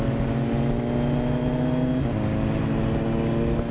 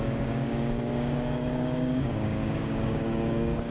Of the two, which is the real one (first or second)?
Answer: first